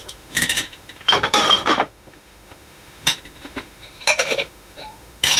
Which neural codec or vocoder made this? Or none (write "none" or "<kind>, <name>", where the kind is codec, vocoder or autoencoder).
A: autoencoder, DAC-VAE